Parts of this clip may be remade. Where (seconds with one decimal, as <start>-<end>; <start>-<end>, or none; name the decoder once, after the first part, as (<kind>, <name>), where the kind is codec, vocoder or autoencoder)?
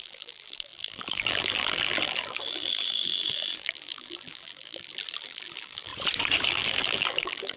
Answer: 0.0-5.9 (vocoder, BigVGAN v2); 6.5-7.6